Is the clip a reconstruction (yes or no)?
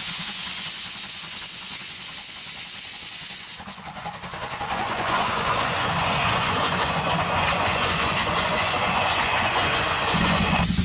yes